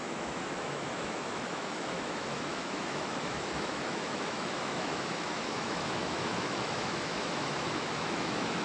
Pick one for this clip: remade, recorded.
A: remade